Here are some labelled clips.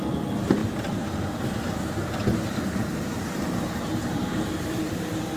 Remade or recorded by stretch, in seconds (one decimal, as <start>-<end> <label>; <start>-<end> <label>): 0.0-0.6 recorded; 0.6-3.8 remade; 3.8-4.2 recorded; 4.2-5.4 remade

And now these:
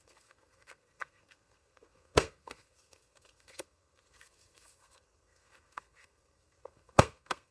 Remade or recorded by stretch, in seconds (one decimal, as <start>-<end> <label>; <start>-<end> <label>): 0.0-7.5 remade

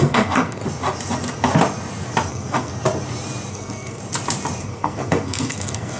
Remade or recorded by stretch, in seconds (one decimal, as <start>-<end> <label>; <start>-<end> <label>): 0.0-0.6 remade; 0.6-2.3 recorded; 2.3-2.7 remade; 2.7-3.5 recorded; 3.5-4.0 remade; 4.0-4.6 recorded; 4.6-6.0 remade

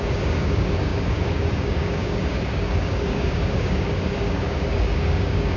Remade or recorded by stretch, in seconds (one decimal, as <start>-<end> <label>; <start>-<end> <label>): 0.0-5.6 remade

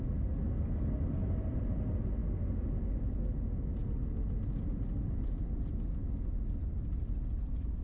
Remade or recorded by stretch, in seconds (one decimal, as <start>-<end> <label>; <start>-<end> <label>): 0.0-1.2 recorded; 1.2-1.7 remade; 1.7-7.8 recorded